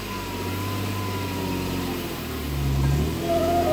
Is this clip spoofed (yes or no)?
no